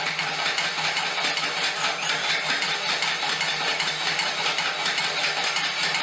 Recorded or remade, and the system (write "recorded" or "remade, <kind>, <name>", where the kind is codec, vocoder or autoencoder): recorded